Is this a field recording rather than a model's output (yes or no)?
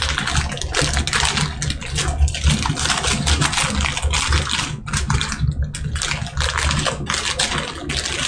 yes